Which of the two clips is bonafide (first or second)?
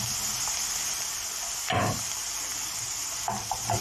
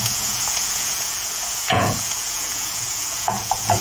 first